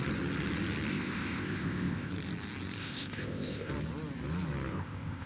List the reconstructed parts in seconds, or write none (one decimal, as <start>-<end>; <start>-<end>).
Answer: 0.9-2.1; 2.8-3.7; 4.7-5.3